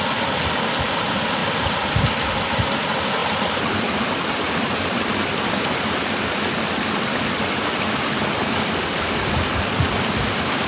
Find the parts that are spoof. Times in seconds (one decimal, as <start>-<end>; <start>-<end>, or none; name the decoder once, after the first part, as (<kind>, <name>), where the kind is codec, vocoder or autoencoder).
1.4-2.5 (vocoder, BigVGAN v2); 3.2-5.5